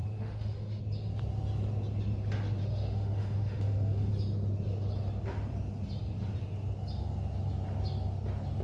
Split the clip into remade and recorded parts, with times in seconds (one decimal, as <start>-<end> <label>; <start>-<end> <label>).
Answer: 0.0-0.8 remade; 0.8-2.6 recorded; 2.6-4.1 remade; 4.1-8.6 recorded